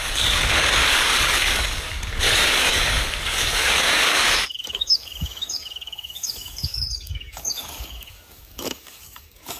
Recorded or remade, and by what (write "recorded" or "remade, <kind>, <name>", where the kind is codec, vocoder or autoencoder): remade, codec, DAC